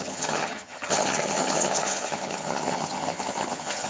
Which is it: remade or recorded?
remade